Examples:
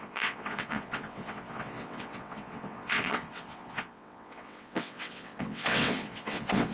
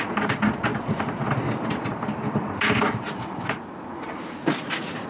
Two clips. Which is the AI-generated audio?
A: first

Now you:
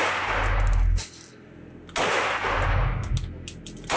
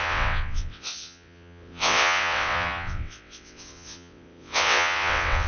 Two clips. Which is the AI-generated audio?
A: second